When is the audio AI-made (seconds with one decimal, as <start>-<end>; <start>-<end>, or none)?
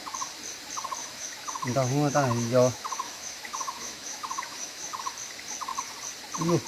1.0-5.0